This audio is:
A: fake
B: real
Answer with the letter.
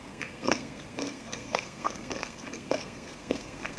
A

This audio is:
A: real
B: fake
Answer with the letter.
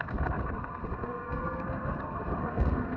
B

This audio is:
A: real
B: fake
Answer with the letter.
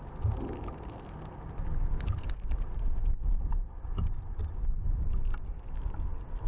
A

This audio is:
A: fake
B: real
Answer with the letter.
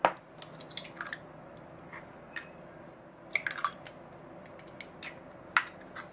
B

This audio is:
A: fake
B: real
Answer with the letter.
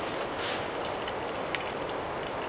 B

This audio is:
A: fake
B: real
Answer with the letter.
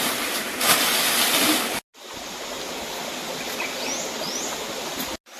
B